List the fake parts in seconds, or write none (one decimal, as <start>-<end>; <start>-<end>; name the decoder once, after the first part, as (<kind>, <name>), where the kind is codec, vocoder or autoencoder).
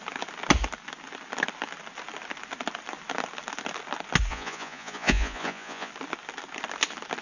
4.3-5.9 (vocoder, Vocos)